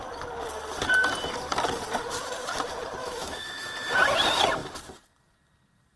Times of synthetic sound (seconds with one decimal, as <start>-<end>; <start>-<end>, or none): 3.0-3.9